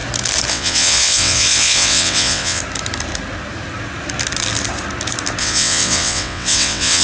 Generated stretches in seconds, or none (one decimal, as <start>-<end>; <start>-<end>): 0.5-2.6; 5.4-7.0